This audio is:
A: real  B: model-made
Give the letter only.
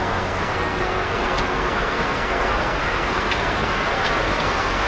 B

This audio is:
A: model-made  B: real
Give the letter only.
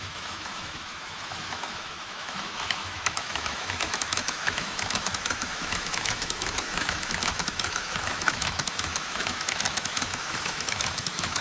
A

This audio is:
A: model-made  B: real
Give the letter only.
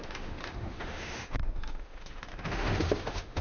A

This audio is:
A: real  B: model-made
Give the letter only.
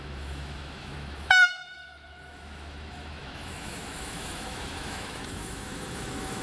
B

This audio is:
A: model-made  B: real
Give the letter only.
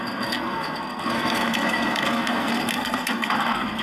A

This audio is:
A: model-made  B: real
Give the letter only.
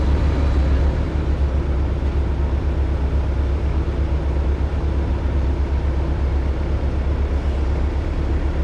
B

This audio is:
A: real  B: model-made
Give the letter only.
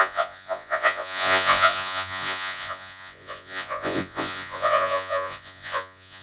B